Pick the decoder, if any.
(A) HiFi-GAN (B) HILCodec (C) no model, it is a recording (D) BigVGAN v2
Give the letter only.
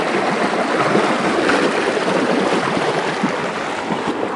C